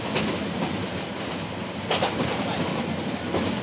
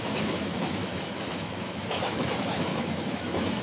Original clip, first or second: first